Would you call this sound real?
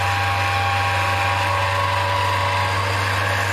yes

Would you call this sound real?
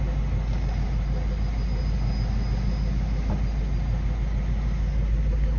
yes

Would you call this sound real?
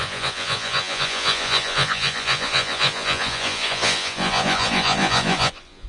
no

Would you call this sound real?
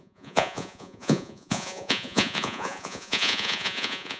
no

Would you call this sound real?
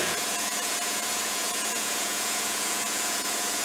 no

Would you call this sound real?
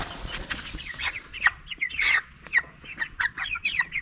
no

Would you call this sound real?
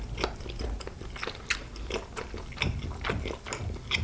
yes